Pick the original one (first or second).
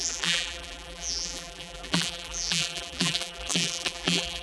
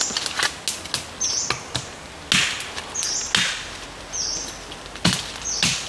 second